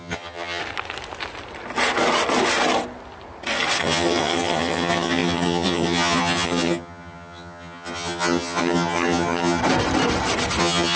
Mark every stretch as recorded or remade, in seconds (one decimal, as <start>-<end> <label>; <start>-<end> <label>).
0.0-0.6 remade; 0.6-3.8 recorded; 3.8-9.6 remade; 9.6-10.6 recorded; 10.6-11.0 remade